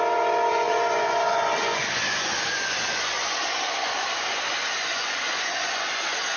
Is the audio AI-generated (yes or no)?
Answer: yes